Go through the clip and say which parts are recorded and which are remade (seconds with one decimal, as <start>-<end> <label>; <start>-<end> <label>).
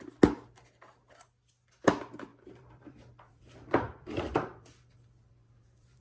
0.0-2.3 recorded; 2.3-6.0 remade